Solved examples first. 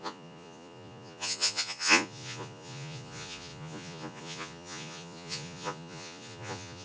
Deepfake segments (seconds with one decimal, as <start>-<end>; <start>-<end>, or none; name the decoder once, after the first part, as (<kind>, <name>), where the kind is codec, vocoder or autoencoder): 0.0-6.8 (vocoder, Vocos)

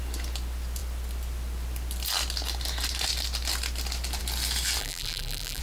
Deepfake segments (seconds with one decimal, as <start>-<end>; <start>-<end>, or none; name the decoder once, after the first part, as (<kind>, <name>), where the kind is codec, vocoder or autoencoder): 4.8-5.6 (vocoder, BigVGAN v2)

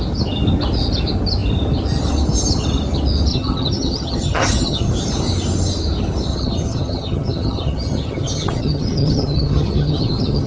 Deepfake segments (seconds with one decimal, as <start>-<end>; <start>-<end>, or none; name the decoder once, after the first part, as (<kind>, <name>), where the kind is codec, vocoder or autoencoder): 3.3-4.9 (vocoder, HiFi-GAN); 6.3-10.5

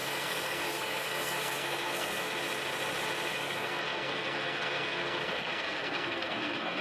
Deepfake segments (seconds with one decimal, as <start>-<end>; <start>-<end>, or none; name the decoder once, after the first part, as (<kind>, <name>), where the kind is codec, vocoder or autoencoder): 0.0-2.3 (codec, SNAC); 3.3-6.8

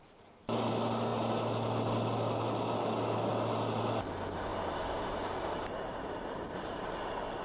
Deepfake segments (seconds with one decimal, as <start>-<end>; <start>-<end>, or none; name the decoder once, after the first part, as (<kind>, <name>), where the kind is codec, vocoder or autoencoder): 4.5-6.9 (vocoder, BigVGAN v2)

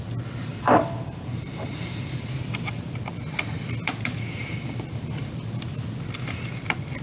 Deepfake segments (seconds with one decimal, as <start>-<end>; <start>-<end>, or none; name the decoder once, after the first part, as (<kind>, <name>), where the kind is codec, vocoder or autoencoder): 0.5-3.0 (vocoder, BigVGAN v2)